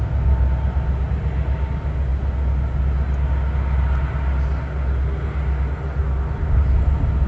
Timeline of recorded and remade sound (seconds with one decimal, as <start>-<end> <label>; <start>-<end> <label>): 0.0-7.3 recorded